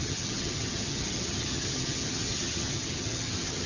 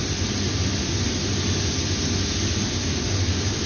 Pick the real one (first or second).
second